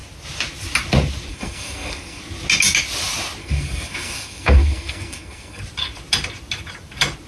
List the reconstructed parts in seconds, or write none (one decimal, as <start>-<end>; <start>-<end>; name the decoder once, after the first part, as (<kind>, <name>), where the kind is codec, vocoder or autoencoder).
1.3-2.2 (codec, SNAC); 3.4-5.6